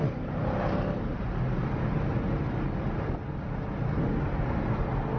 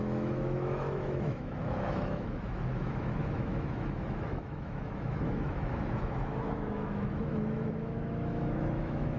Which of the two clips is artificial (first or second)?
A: second